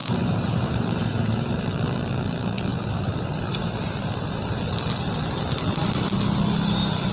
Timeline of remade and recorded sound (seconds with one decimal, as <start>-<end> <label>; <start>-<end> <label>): 0.0-1.6 remade; 1.6-2.7 recorded; 2.7-4.6 remade; 4.6-7.1 recorded